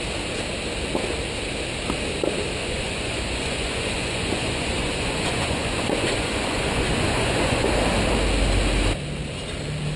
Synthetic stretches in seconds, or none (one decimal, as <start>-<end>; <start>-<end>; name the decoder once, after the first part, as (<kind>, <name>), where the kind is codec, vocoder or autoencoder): 2.6-7.7 (vocoder, Vocos)